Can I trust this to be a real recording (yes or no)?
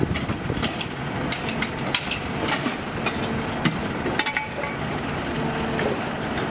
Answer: yes